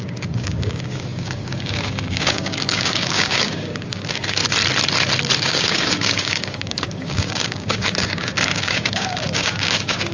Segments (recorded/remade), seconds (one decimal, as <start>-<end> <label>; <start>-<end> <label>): 0.0-4.4 remade; 4.4-5.4 recorded; 5.4-10.1 remade